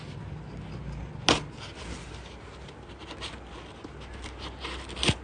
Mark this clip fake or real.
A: real